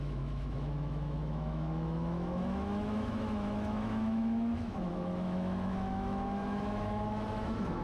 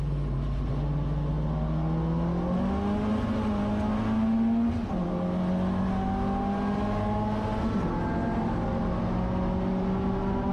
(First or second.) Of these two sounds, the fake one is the first